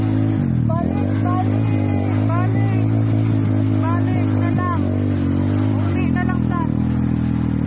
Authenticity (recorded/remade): recorded